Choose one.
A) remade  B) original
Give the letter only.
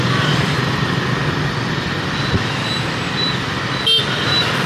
B